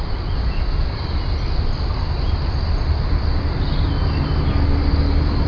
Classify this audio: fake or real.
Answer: real